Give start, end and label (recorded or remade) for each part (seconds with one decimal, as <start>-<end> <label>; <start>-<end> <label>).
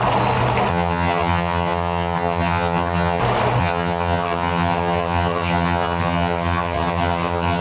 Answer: 0.0-0.7 recorded; 0.7-3.2 remade; 3.2-3.6 recorded; 3.6-7.6 remade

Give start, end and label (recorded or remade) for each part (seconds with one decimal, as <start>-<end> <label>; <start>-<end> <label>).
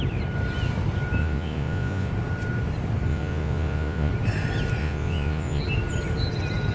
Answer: 0.0-1.2 recorded; 1.2-2.1 remade; 2.1-3.1 recorded; 3.1-4.1 remade; 4.1-4.8 recorded; 4.8-5.6 remade; 5.6-6.7 recorded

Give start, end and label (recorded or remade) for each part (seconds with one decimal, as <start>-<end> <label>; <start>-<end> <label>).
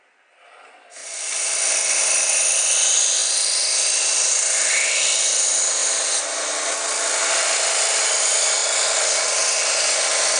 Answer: 0.0-10.4 recorded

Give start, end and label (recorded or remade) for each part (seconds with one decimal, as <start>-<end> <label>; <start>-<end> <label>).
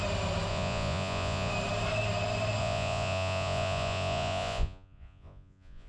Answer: 0.0-0.5 recorded; 0.5-1.5 remade; 1.5-2.6 recorded; 2.6-5.9 remade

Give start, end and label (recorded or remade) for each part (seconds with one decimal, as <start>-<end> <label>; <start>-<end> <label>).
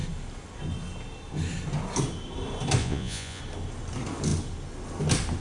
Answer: 0.0-2.8 recorded; 2.8-3.4 remade; 3.4-5.4 recorded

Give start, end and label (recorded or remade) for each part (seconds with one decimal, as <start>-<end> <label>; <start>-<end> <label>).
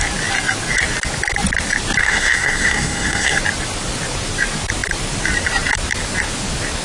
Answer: 0.0-2.0 recorded; 2.0-3.4 remade; 3.4-6.8 recorded